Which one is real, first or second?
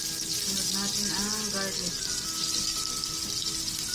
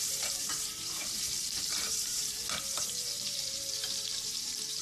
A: first